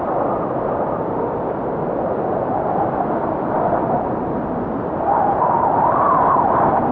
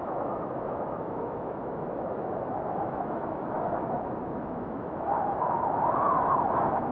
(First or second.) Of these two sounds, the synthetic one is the second